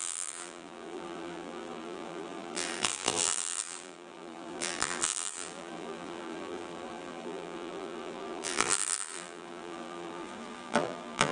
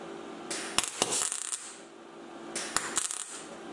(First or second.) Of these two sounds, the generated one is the first